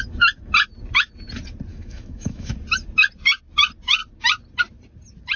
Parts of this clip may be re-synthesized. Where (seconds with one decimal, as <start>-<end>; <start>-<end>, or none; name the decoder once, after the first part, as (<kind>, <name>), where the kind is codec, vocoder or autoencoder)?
1.7-2.5 (autoencoder, DAC-VAE)